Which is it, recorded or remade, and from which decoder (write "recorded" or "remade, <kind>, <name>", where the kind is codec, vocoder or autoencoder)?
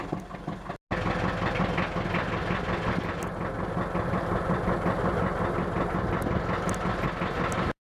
recorded